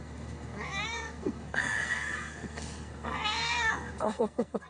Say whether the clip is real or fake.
fake